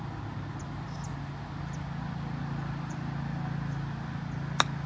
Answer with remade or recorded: recorded